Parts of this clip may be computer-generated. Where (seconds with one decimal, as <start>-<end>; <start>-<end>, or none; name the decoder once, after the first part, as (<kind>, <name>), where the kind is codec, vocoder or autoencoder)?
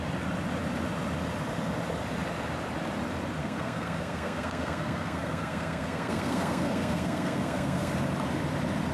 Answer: 3.4-7.9 (codec, SNAC)